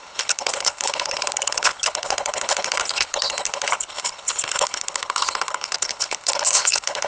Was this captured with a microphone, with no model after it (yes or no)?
no